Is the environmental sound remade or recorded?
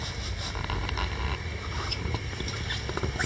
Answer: recorded